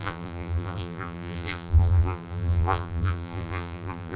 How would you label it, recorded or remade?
remade